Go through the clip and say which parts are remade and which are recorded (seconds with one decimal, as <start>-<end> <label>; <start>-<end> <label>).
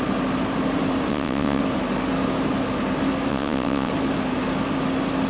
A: 0.0-1.1 recorded; 1.1-1.6 remade; 1.6-3.3 recorded; 3.3-3.9 remade; 3.9-5.3 recorded